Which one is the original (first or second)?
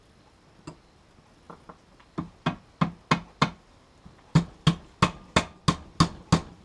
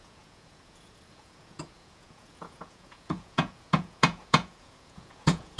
first